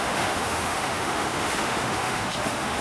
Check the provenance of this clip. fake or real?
fake